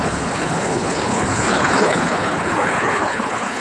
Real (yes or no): no